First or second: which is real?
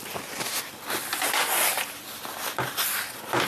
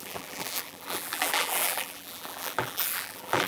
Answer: first